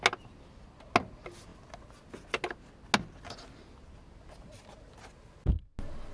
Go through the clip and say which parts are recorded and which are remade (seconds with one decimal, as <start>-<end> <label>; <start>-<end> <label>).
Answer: 0.0-6.1 recorded